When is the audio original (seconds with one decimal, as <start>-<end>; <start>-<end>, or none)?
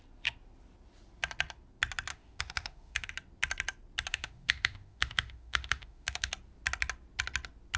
0.0-2.1; 3.1-4.1; 6.3-7.8